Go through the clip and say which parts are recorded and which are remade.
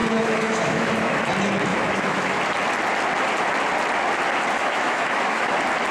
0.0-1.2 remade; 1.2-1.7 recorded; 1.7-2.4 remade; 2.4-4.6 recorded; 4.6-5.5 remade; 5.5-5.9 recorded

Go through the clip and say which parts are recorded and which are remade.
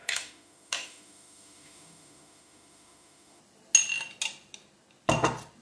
0.0-3.4 remade; 3.4-5.6 recorded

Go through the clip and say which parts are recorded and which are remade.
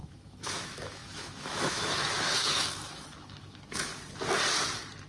0.0-3.9 remade; 3.9-5.1 recorded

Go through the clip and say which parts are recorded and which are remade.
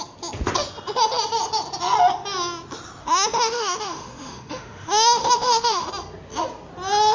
0.0-3.0 recorded; 3.0-5.9 remade; 5.9-7.1 recorded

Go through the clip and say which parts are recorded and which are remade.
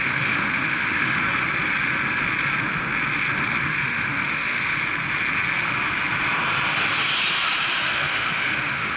0.0-1.2 remade; 1.2-3.6 recorded; 3.6-4.7 remade; 4.7-7.9 recorded; 7.9-9.0 remade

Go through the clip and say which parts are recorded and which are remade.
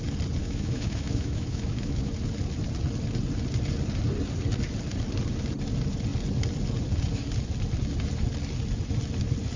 0.0-0.4 recorded; 0.4-2.1 remade; 2.1-9.6 recorded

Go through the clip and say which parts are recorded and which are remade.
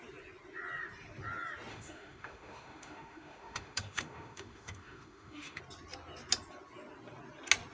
0.0-1.7 recorded; 1.7-5.6 remade; 5.6-7.7 recorded